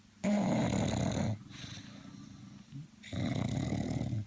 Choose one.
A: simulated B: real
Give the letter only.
B